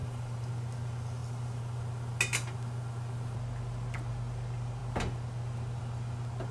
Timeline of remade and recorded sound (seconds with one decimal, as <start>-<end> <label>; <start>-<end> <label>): 0.0-0.5 remade; 0.5-6.5 recorded